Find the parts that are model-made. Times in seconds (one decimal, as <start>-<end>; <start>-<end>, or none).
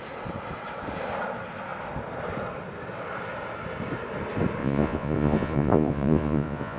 4.6-6.8